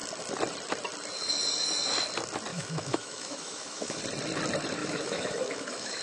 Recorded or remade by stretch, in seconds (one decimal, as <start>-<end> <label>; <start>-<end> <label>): 0.0-2.5 recorded; 2.5-4.0 remade; 4.0-4.8 recorded; 4.8-6.0 remade